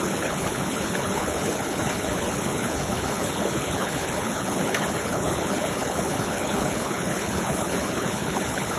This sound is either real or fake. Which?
fake